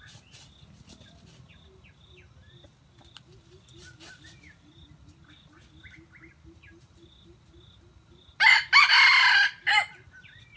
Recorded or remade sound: recorded